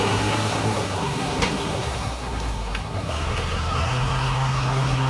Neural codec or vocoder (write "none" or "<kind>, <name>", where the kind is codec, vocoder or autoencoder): codec, SNAC